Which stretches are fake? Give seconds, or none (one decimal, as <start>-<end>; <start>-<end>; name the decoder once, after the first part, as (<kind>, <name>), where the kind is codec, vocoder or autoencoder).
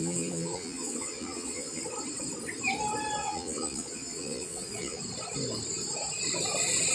0.0-1.8 (vocoder, Vocos); 3.2-5.0